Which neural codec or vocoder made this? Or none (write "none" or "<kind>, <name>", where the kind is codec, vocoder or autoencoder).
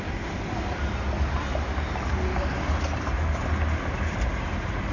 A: none